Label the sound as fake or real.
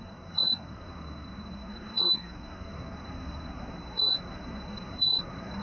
fake